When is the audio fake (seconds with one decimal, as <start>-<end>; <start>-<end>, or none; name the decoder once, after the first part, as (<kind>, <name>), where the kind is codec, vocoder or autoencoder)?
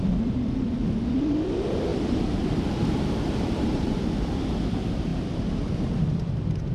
1.9-4.0 (vocoder, BigVGAN v2)